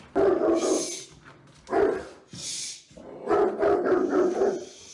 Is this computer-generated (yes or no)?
no